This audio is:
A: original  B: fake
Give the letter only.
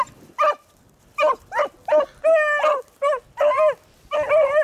A